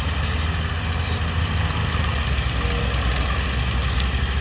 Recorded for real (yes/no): yes